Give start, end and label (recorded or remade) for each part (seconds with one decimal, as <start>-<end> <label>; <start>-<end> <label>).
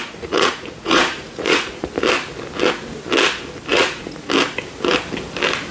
0.0-1.7 remade; 1.7-3.7 recorded; 3.7-4.3 remade; 4.3-5.7 recorded